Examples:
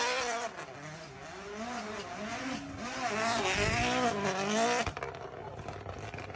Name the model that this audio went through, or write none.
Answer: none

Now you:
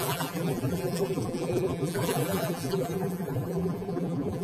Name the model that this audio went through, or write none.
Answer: vocoder, BigVGAN v2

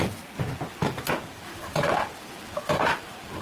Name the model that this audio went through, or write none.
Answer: none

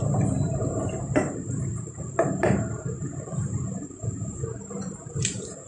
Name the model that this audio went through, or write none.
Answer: vocoder, BigVGAN v2